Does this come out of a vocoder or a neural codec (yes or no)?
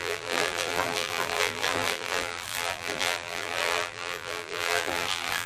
yes